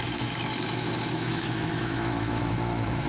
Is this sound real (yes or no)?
no